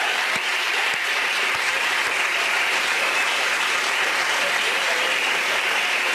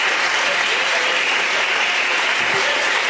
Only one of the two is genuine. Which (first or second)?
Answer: second